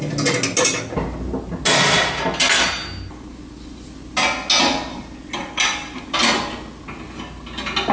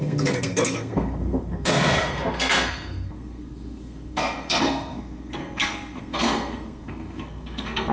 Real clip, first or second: first